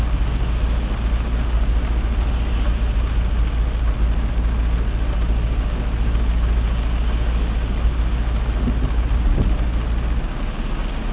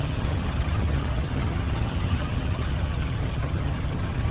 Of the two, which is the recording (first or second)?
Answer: first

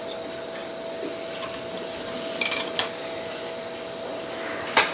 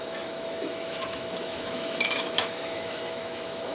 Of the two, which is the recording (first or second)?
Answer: first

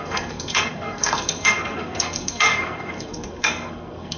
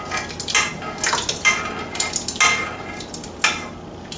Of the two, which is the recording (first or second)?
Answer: second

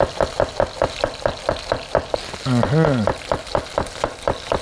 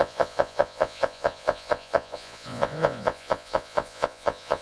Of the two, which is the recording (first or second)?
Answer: first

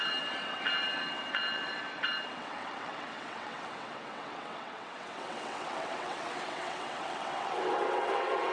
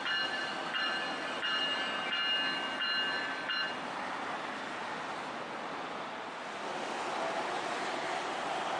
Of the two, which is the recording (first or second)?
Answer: second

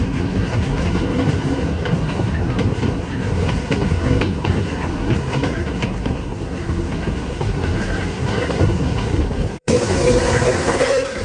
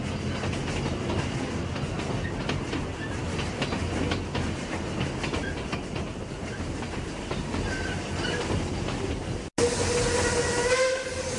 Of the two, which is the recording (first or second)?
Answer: second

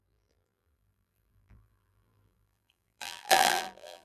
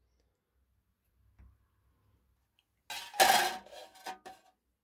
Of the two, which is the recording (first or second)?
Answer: second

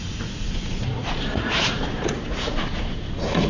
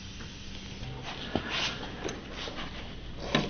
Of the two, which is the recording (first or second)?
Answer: second